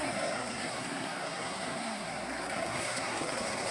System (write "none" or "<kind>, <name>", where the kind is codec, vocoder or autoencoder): codec, SNAC